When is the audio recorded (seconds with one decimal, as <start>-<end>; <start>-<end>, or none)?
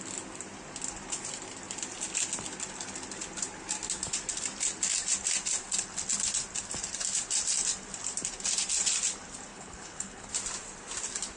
0.0-9.5; 10.3-11.4